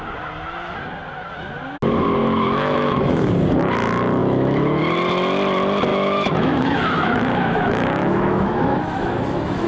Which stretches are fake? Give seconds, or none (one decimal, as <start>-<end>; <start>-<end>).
2.2-3.3; 4.2-4.8; 5.9-9.7